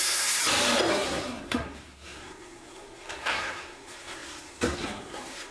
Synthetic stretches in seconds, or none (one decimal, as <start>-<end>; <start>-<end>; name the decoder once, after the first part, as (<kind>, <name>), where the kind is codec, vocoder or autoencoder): 0.0-0.4 (codec, SNAC); 0.9-5.5